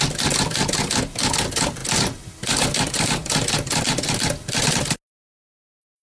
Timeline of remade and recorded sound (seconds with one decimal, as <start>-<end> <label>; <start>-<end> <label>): 0.0-6.0 recorded